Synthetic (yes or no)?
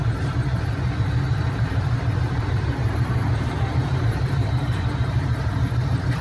yes